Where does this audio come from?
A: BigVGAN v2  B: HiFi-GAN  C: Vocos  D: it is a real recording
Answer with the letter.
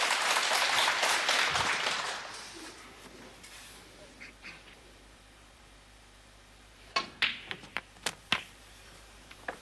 A